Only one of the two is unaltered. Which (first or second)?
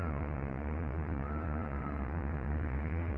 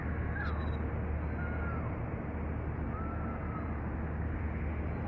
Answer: second